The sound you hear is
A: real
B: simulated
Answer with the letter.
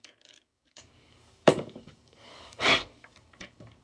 B